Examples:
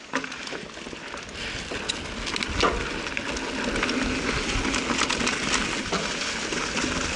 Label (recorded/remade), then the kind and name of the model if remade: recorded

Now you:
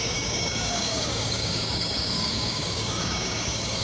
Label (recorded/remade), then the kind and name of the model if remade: remade, codec, DAC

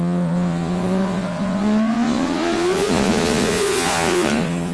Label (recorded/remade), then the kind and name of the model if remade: remade, vocoder, Vocos